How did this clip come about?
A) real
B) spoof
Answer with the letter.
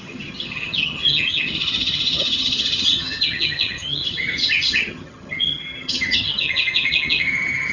B